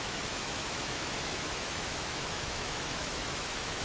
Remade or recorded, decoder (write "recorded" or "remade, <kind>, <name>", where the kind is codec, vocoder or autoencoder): remade, autoencoder, DAC-VAE